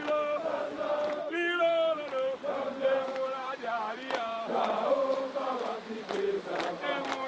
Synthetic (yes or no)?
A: yes